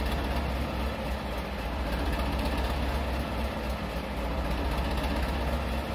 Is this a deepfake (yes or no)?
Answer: no